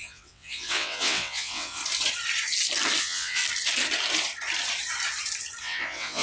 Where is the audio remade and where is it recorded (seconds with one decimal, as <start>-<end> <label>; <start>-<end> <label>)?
0.0-1.8 remade; 1.8-3.0 recorded; 3.0-3.4 remade; 3.4-5.6 recorded; 5.6-6.2 remade